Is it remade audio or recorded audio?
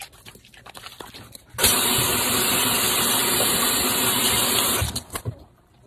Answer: recorded